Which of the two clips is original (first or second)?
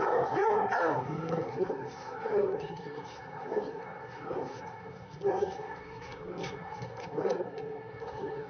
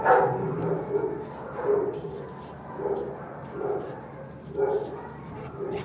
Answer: second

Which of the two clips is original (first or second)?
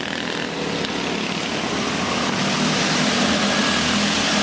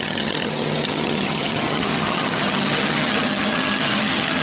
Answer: first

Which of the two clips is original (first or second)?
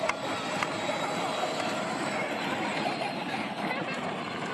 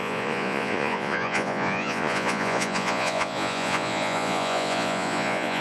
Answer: first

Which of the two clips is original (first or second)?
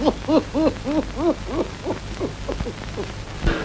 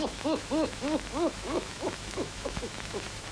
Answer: first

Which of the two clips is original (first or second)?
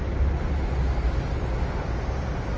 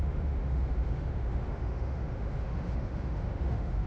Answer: first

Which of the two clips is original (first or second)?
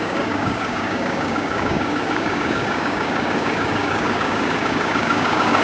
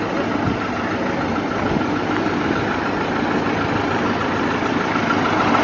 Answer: second